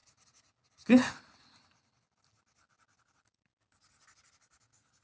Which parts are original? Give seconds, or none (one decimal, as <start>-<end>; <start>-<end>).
0.0-3.0

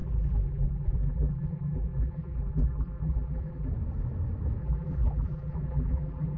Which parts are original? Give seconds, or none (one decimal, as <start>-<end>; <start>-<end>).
3.7-4.6

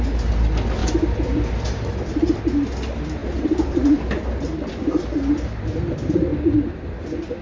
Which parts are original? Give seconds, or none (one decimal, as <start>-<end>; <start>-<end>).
0.0-0.8; 2.4-3.2; 4.0-7.4

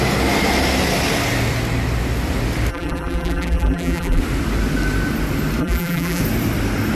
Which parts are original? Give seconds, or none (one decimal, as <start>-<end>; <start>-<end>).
0.0-2.7; 4.2-5.6; 6.2-6.9